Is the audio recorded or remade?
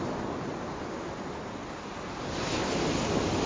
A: recorded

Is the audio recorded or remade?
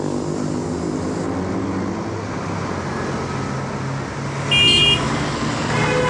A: recorded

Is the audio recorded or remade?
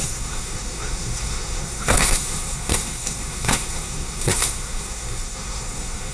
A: remade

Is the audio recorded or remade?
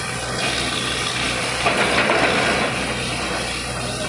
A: recorded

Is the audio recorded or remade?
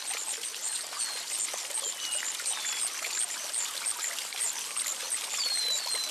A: recorded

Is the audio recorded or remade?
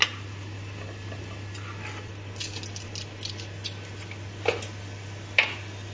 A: recorded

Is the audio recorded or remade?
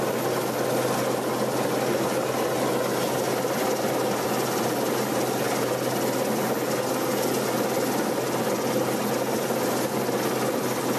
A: recorded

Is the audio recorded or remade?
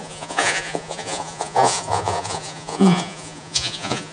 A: remade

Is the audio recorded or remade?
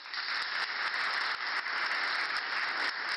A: recorded